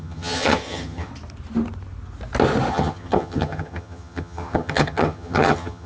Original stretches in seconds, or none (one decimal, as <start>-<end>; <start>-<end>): 1.1-2.7